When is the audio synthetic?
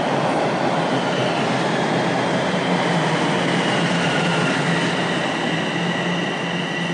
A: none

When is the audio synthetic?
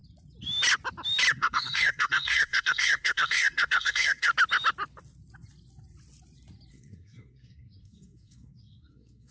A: 1.3-4.3 (codec, SNAC); 6.7-9.3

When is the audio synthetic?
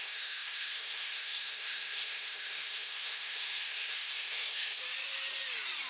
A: 0.0-4.8 (codec, SNAC)